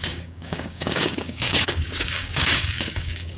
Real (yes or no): no